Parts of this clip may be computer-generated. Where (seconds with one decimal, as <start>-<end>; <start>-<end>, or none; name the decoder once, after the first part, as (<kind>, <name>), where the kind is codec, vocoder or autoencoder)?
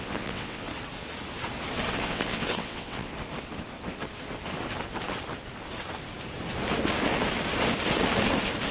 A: 0.0-0.7 (vocoder, WaveNeXt); 1.9-3.1